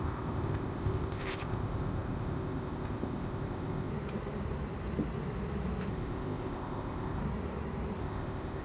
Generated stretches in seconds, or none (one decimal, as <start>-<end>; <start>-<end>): 0.0-3.9; 5.9-7.2; 8.0-8.6